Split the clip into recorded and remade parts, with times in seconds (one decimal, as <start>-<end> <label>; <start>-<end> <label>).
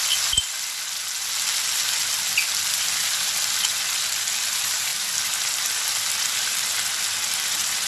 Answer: 0.0-7.9 recorded